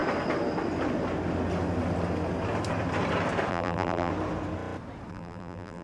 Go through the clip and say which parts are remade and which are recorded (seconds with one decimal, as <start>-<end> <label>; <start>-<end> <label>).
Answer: 0.0-3.5 recorded; 3.5-4.1 remade; 4.1-5.1 recorded; 5.1-5.8 remade